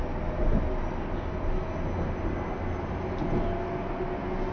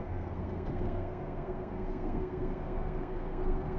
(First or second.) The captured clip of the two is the first